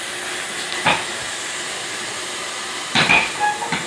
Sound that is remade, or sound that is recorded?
recorded